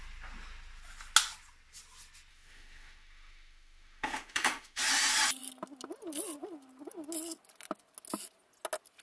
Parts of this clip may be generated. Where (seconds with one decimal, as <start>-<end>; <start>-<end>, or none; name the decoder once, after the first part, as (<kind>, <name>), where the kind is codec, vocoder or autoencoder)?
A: 2.3-4.8 (autoencoder, DAC-VAE)